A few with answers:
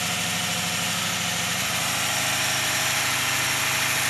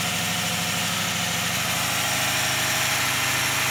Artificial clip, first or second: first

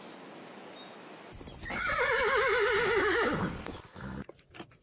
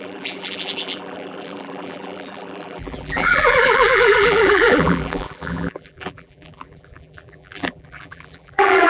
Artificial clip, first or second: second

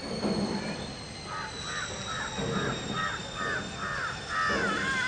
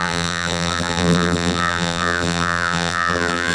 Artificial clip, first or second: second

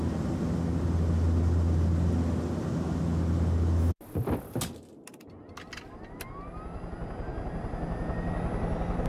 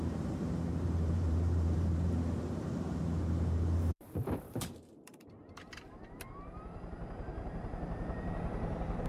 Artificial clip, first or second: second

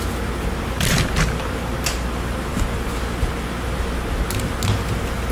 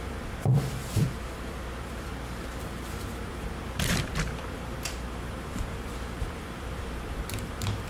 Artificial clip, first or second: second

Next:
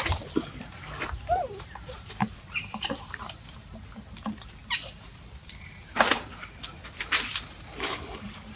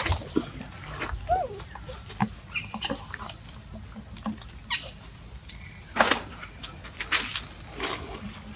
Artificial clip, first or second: first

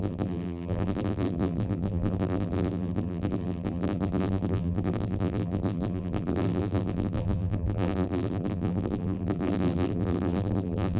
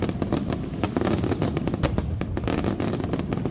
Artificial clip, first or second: first